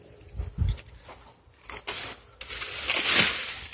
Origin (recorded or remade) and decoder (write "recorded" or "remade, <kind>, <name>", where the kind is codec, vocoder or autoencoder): recorded